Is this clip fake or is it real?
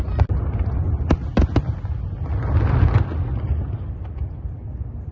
real